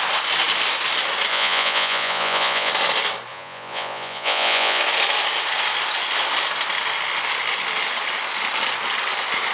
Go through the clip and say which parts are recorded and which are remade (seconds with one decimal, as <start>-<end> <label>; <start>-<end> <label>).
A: 0.0-1.3 recorded; 1.3-2.7 remade; 2.7-3.3 recorded; 3.3-4.8 remade; 4.8-9.5 recorded

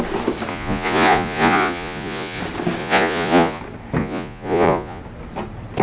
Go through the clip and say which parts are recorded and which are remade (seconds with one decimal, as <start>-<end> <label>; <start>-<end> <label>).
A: 0.0-0.5 recorded; 0.5-2.4 remade; 2.4-2.8 recorded; 2.8-3.6 remade; 3.6-4.0 recorded; 4.0-5.0 remade; 5.0-5.8 recorded